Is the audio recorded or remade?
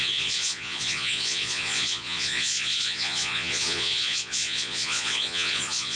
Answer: remade